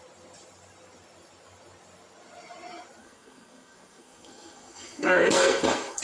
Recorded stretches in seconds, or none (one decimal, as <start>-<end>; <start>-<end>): 0.0-3.0